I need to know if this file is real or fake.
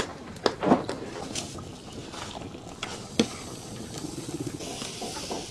real